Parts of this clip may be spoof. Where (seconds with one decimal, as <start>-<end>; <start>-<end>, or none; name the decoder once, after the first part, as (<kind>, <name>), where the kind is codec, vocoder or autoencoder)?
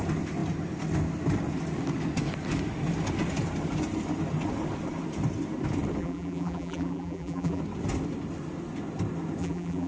6.0-7.6 (vocoder, BigVGAN v2); 9.4-9.9